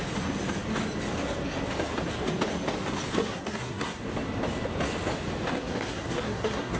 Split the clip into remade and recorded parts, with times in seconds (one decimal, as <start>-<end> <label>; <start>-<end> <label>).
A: 0.0-3.2 recorded; 3.2-4.0 remade; 4.0-5.5 recorded; 5.5-6.8 remade